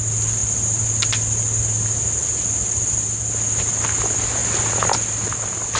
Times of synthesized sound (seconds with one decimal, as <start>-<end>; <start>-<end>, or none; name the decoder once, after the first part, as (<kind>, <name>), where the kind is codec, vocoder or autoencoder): none